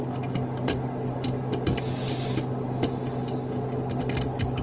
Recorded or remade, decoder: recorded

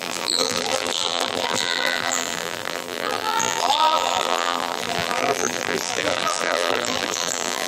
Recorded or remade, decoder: remade, vocoder, BigVGAN v2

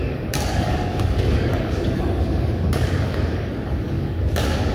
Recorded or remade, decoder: remade, codec, DAC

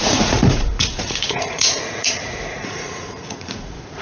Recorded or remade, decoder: remade, vocoder, Vocos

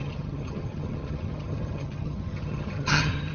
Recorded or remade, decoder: remade, vocoder, HiFi-GAN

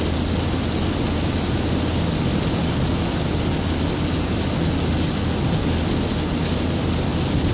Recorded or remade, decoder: recorded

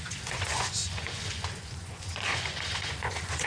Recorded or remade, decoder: remade, vocoder, Vocos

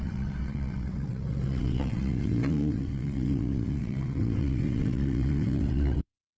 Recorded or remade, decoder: remade, vocoder, WaveNeXt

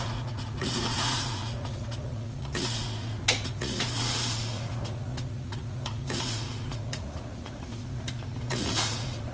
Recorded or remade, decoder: remade, vocoder, Vocos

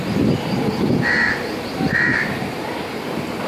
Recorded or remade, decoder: recorded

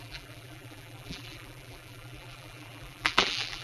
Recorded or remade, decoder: remade, vocoder, BigVGAN v2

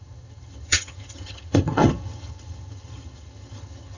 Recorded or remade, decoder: remade, vocoder, HiFi-GAN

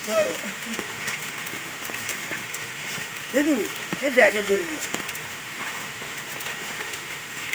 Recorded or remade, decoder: remade, autoencoder, DAC-VAE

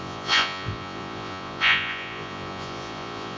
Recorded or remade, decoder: remade, vocoder, Vocos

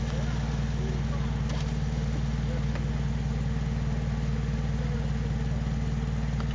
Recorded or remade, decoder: recorded